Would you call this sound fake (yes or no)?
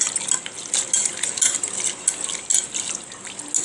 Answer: no